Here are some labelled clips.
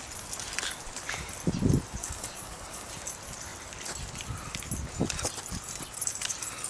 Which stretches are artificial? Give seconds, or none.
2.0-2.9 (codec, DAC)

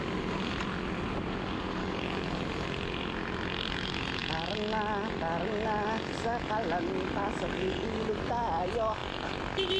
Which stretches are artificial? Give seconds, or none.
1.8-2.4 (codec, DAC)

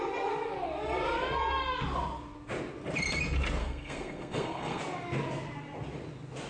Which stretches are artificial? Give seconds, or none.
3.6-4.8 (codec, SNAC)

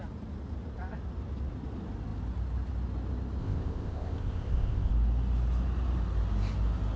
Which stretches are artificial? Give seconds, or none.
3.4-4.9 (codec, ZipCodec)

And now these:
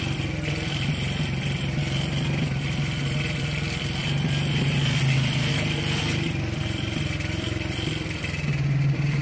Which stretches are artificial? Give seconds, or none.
none

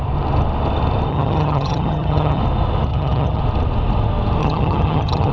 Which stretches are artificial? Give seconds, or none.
1.1-2.4 (vocoder, HiFi-GAN); 2.9-3.4; 4.4-5.3

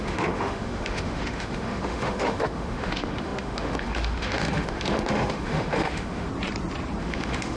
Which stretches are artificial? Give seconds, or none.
0.0-6.3 (autoencoder, DAC-VAE); 7.0-7.6